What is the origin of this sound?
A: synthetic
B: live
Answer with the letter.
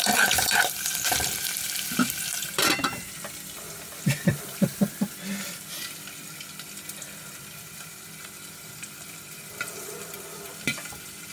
A